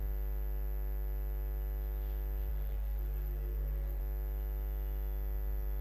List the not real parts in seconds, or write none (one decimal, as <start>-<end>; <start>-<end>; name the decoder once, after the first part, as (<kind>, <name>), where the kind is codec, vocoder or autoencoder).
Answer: 2.5-4.0 (codec, SNAC)